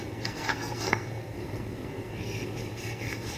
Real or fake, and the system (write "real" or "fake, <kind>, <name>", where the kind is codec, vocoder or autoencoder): fake, codec, SNAC